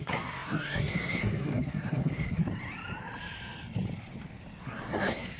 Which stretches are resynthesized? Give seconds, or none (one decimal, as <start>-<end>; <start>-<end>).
0.0-2.4; 4.6-5.4